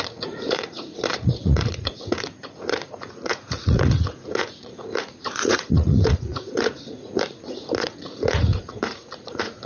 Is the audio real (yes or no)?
no